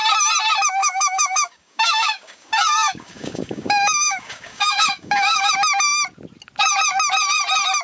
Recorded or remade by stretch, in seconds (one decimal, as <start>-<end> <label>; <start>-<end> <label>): 0.0-0.8 recorded; 0.8-5.5 remade; 5.5-7.8 recorded